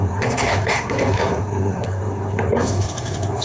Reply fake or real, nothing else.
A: fake